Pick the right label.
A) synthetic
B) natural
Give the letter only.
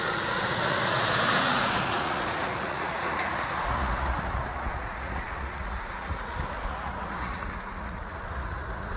A